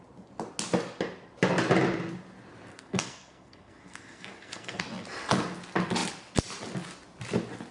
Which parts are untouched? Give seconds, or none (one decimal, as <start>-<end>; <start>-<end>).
0.0-2.7; 4.8-7.7